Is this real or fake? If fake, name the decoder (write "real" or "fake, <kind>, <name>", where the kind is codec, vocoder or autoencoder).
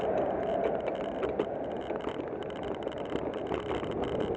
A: real